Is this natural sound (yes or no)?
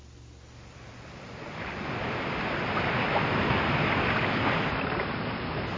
yes